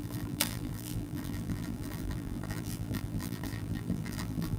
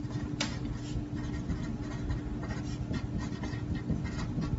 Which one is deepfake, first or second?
first